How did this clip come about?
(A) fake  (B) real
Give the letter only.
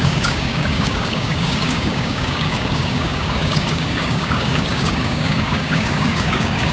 A